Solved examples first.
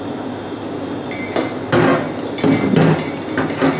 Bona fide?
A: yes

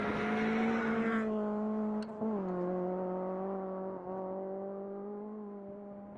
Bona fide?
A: yes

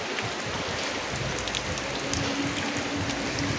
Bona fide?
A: yes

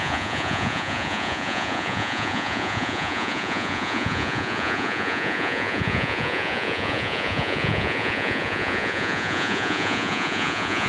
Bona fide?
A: no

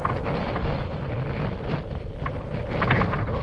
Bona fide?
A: yes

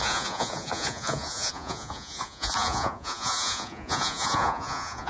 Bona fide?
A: no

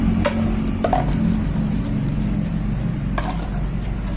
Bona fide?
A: yes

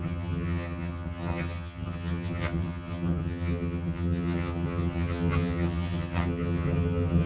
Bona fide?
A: no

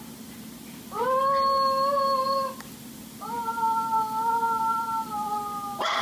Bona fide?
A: yes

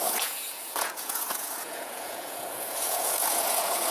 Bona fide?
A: no